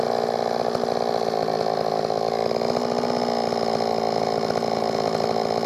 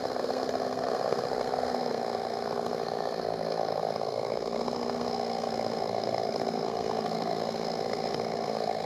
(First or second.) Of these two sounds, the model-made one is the second